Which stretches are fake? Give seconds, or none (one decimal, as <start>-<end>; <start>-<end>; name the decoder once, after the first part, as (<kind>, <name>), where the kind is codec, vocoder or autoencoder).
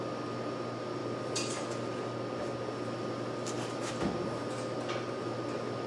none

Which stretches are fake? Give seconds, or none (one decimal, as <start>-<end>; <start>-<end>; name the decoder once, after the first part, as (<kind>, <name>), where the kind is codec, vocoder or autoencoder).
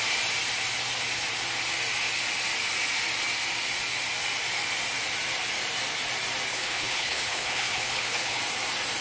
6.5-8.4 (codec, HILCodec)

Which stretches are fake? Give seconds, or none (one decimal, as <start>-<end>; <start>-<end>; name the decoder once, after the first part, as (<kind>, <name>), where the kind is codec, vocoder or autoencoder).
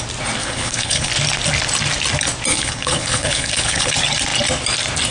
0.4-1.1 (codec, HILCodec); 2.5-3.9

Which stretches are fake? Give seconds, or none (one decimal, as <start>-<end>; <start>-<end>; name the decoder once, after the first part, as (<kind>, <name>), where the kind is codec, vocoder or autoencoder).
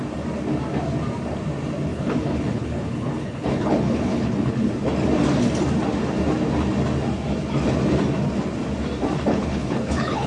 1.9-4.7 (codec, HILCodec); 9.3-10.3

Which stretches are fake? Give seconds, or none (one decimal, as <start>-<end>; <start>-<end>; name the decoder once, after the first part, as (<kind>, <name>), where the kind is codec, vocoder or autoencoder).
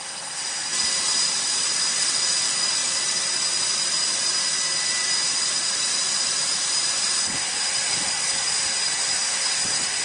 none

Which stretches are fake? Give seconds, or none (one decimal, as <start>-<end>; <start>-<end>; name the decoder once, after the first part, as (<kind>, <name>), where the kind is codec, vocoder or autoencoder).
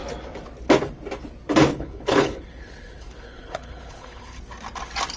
1.7-4.4 (codec, HILCodec)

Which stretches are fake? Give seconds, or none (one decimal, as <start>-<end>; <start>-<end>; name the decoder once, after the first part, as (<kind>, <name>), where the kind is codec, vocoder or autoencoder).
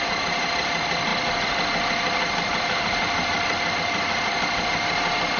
none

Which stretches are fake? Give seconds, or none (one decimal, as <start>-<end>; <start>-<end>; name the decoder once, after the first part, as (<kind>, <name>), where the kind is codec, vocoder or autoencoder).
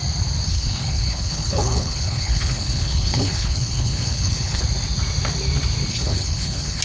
0.5-4.6 (codec, HILCodec); 5.9-6.8